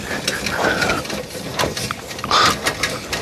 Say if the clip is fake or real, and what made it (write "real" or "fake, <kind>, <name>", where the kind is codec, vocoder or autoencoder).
real